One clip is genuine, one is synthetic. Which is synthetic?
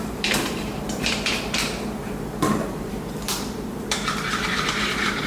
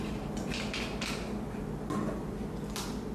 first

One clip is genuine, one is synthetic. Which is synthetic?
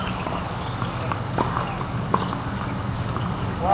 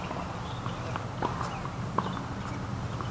first